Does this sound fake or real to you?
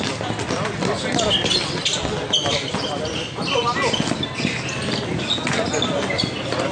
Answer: real